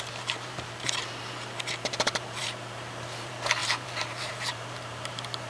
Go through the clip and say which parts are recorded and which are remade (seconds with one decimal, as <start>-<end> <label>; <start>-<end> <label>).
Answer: 0.0-5.5 remade